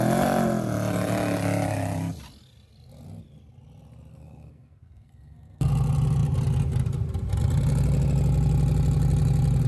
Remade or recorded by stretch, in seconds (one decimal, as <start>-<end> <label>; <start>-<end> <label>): 0.0-4.1 recorded; 4.1-5.7 remade; 5.7-9.7 recorded